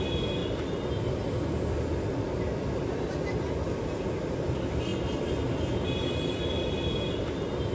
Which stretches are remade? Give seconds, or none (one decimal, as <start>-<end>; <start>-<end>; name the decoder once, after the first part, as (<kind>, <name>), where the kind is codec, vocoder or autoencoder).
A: none